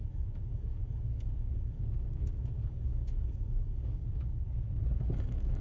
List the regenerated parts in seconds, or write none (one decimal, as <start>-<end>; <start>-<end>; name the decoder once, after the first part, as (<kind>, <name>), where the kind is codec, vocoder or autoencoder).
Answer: 0.0-1.8 (codec, DAC); 2.2-5.6